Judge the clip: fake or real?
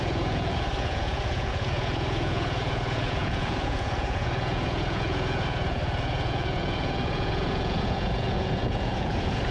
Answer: fake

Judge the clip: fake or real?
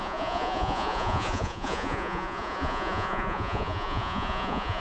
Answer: fake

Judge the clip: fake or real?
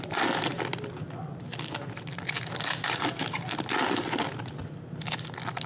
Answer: real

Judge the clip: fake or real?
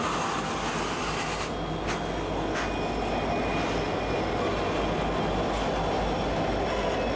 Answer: real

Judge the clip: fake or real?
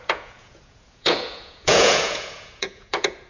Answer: fake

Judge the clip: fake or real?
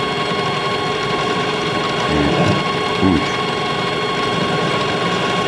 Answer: real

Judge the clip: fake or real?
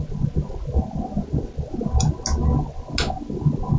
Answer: real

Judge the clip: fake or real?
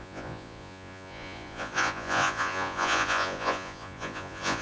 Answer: fake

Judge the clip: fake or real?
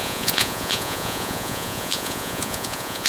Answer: fake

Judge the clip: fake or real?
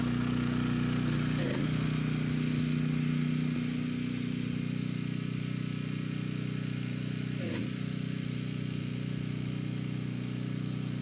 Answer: real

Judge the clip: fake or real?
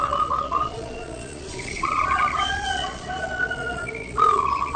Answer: fake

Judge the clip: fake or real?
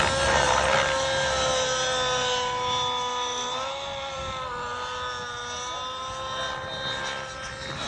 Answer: real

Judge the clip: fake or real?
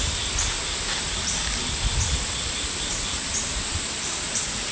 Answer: real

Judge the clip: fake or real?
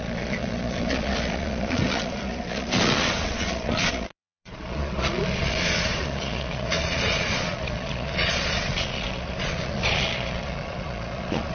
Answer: fake